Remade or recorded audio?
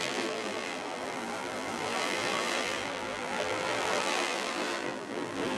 remade